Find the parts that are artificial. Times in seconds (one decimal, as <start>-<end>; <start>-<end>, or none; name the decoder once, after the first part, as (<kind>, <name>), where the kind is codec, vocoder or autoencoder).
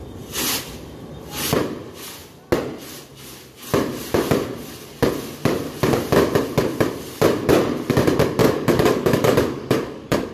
8.4-10.3 (codec, DAC)